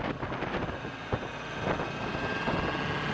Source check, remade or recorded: recorded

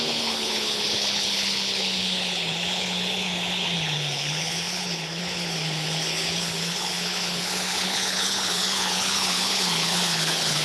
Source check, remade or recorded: remade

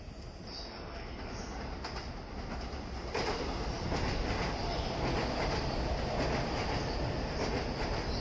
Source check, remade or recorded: recorded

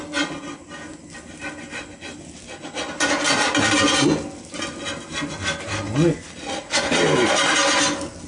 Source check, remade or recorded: recorded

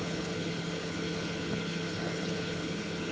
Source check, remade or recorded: remade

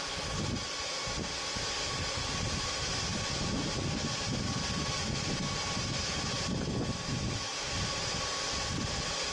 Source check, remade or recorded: recorded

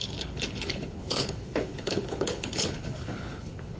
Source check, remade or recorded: remade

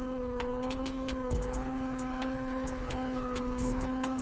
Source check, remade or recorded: remade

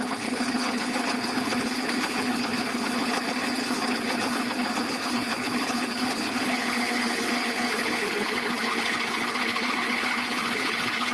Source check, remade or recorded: remade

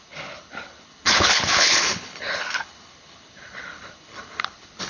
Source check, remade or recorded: remade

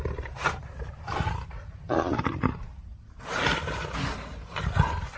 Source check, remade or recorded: recorded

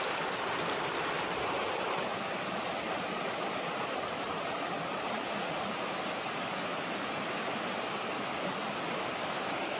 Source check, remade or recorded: recorded